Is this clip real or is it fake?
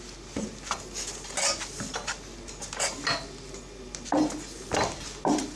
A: real